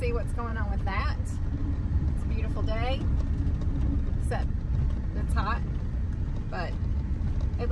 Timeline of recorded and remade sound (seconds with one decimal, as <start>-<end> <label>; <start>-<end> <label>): 0.0-0.5 recorded; 0.5-1.0 remade; 1.0-1.6 recorded; 1.6-2.2 remade; 2.2-7.7 recorded